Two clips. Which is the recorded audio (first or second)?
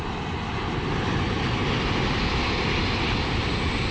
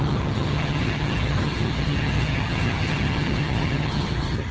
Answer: first